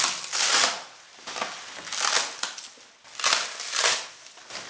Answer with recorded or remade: recorded